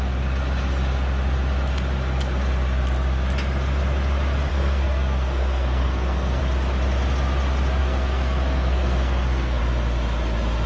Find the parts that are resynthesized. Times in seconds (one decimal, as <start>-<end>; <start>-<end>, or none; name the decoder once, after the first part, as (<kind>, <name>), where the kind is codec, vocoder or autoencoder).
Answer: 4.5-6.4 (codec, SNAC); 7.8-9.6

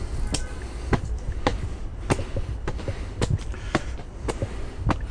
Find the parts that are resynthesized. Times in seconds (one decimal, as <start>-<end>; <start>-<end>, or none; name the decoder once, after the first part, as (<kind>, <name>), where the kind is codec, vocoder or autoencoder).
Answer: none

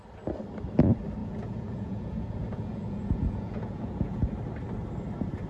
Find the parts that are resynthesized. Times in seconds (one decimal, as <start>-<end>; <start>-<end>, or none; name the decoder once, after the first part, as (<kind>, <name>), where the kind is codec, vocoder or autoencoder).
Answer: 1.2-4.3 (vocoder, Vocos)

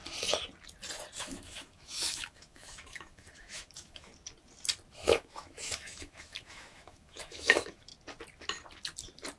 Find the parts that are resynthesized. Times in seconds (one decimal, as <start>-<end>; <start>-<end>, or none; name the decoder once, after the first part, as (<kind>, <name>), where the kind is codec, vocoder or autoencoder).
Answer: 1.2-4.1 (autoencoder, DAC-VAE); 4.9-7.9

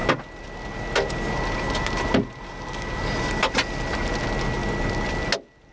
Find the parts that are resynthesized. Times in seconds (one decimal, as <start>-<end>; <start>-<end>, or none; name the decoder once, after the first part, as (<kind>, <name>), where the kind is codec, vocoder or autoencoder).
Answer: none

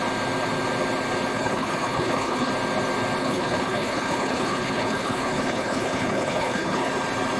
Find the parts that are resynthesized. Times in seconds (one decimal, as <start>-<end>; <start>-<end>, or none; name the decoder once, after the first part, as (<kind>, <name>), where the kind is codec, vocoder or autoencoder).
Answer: 1.3-2.5 (codec, HILCodec); 3.2-6.9

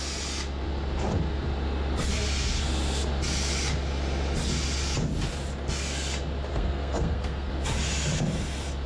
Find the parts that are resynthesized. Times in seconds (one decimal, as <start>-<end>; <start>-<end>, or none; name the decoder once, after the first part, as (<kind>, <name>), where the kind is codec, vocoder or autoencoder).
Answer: 6.5-7.5 (codec, SNAC)

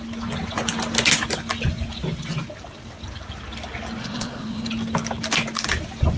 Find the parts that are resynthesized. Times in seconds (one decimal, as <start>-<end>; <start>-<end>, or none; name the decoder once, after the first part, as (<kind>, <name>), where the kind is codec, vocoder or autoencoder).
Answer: 4.0-4.7 (codec, SNAC)